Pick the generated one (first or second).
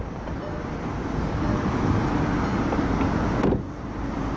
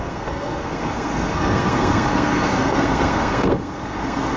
second